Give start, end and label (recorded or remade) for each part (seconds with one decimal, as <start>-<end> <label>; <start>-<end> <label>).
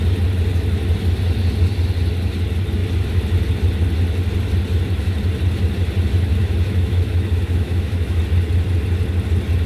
0.0-6.4 recorded; 6.4-8.2 remade; 8.2-9.7 recorded